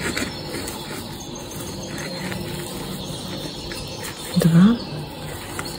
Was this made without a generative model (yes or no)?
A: yes